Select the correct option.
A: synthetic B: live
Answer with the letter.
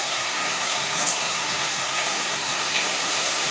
A